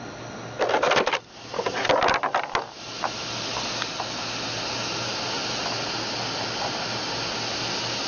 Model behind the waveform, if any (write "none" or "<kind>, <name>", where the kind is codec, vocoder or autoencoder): none